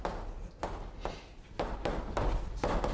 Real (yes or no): yes